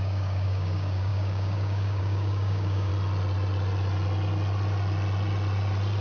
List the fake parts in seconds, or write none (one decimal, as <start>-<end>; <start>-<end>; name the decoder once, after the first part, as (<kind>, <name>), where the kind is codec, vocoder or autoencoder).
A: 0.0-2.9 (codec, DAC)